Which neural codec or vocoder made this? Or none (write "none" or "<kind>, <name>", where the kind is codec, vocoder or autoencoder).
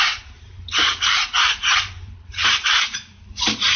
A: vocoder, BigVGAN v2